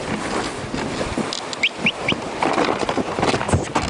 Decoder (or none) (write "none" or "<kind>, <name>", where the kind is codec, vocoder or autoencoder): none